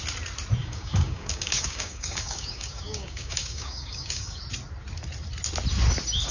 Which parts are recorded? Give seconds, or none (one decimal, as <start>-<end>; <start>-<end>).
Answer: 0.0-0.6; 4.4-6.3